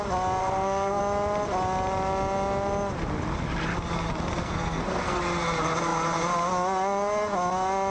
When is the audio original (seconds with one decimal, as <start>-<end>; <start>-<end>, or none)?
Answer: 0.0-0.4; 1.0-4.4; 5.2-7.9